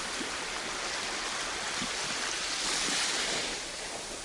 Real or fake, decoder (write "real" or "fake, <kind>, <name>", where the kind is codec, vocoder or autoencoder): real